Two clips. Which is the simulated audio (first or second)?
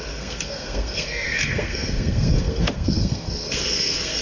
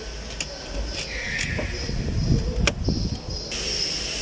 first